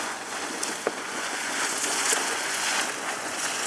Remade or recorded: remade